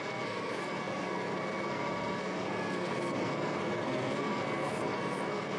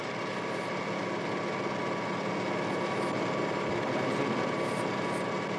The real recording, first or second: second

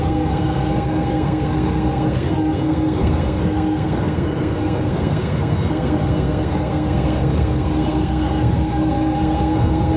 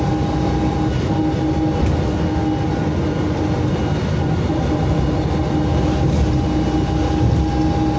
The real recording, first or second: second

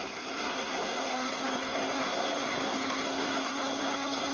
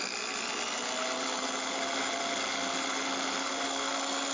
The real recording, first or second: second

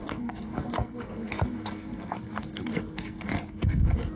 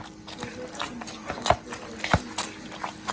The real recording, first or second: second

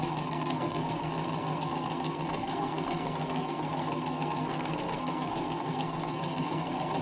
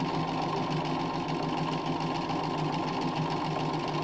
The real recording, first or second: second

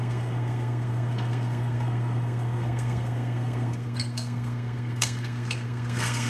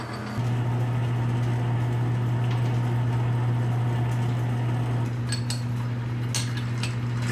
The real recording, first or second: second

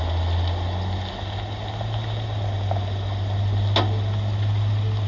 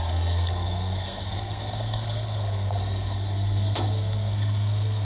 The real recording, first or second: first